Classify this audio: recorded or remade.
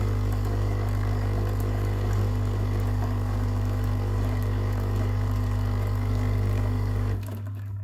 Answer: remade